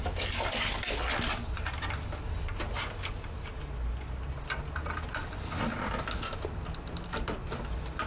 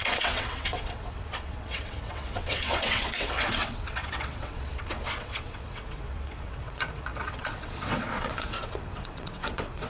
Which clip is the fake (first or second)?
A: second